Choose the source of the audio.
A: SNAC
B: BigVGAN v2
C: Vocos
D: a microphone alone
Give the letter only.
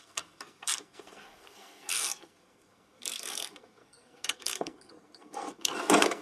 A